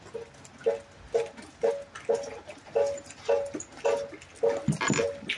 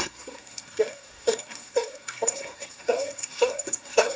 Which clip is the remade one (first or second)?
second